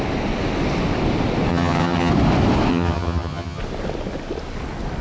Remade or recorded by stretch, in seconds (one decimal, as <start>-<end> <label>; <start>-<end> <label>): 0.0-1.5 recorded; 1.5-2.1 remade; 2.1-2.7 recorded; 2.7-3.6 remade; 3.6-5.0 recorded